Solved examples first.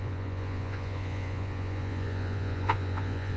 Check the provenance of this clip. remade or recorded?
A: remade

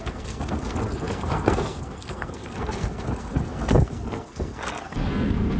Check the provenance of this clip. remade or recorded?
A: remade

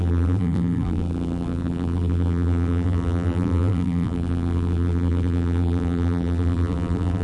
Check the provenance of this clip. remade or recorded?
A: remade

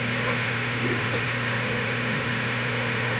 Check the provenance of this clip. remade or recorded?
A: remade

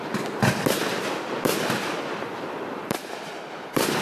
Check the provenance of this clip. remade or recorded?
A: recorded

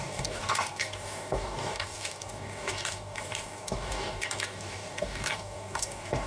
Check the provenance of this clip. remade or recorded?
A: remade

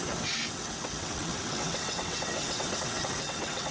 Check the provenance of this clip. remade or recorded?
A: remade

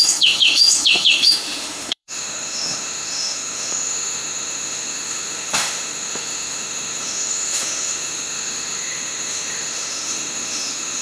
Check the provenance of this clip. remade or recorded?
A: remade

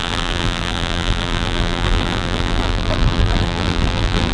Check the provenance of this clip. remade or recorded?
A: remade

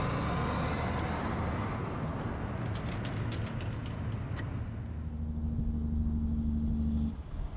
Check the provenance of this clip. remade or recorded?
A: recorded